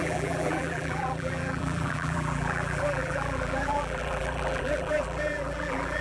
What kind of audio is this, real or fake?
fake